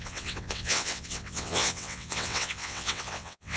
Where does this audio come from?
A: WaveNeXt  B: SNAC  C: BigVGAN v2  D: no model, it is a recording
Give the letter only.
A